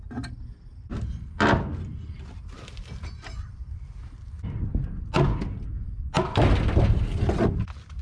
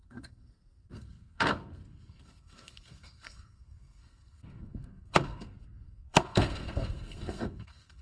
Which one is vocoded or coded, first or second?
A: second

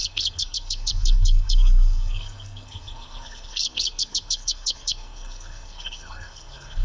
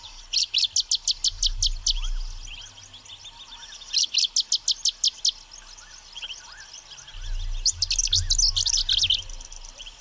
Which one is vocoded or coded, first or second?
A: first